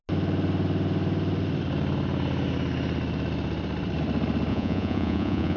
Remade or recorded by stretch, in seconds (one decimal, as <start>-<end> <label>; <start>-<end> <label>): 0.0-4.5 recorded; 4.5-5.6 remade